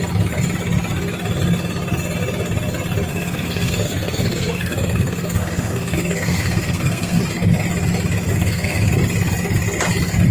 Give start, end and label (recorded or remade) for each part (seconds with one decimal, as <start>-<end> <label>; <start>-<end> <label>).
0.0-3.1 recorded; 3.1-7.2 remade; 7.2-8.3 recorded; 8.3-8.9 remade; 8.9-10.3 recorded

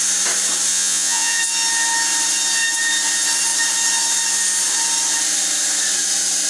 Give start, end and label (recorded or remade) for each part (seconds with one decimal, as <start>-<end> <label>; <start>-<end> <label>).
0.0-0.7 recorded; 0.7-1.4 remade; 1.4-6.5 recorded

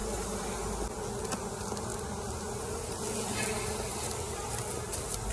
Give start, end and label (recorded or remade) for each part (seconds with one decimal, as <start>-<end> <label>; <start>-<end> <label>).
0.0-5.3 recorded